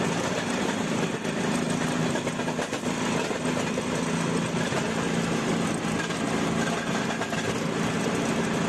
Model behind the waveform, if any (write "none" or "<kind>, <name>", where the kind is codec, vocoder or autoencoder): none